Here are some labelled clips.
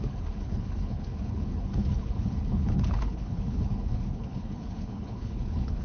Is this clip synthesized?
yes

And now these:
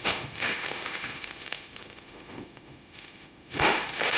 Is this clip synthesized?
yes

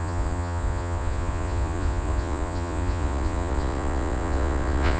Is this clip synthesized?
yes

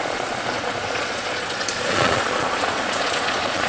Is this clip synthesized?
yes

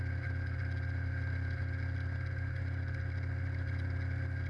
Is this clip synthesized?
no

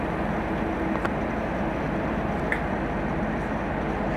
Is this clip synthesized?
no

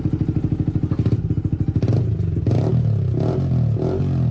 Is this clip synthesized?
no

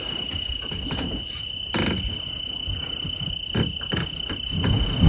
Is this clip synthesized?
no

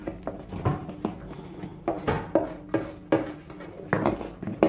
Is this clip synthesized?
no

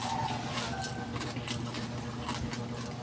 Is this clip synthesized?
no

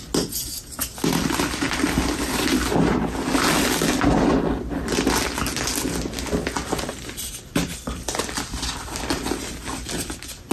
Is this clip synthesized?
no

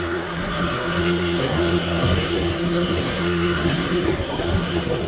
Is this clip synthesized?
yes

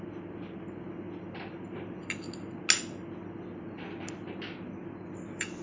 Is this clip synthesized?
no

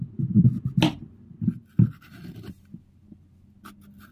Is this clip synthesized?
no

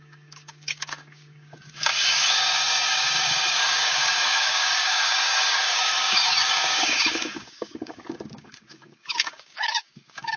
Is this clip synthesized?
yes